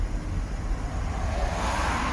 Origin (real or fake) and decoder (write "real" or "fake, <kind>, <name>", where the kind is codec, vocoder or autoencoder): real